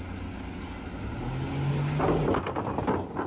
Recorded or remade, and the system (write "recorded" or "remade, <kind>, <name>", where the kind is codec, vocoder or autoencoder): recorded